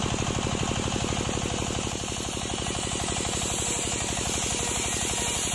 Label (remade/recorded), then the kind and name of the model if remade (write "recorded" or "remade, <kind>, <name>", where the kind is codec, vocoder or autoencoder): recorded